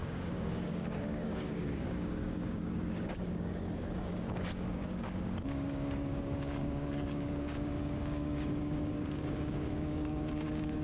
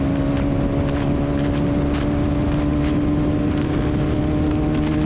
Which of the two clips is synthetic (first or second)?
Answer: first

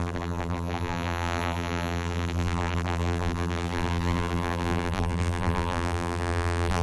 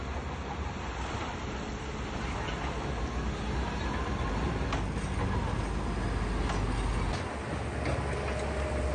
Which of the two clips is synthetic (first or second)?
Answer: first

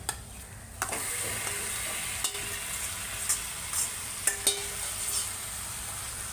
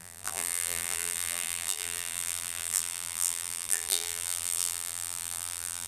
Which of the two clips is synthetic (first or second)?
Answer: second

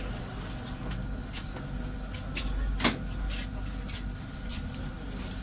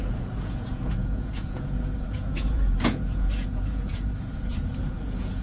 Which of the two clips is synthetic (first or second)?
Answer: second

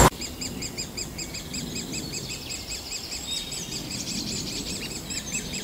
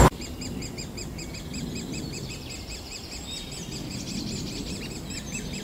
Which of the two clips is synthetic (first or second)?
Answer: first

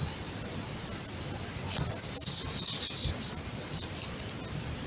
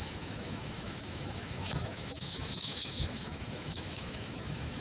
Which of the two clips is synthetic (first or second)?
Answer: second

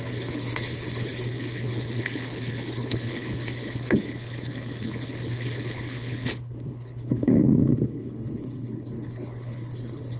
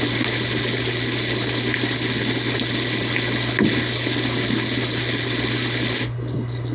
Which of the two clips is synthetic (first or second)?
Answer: first